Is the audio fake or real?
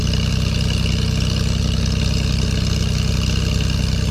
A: real